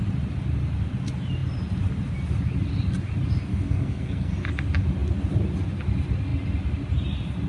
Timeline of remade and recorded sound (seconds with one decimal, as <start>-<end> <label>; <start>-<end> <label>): 0.0-3.5 recorded; 3.5-4.3 remade; 4.3-7.5 recorded